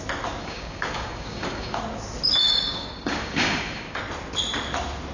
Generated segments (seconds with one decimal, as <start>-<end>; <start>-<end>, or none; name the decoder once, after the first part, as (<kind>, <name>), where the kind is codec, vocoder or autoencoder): 0.4-1.8 (codec, DAC); 2.4-4.0